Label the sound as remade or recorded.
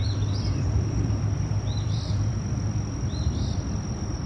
remade